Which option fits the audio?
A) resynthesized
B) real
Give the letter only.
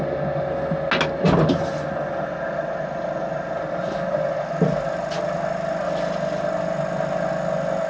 B